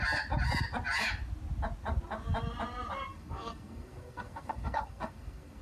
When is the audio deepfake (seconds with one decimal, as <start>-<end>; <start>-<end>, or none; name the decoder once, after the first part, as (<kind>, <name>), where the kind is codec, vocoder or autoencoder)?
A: 3.1-5.6 (codec, SNAC)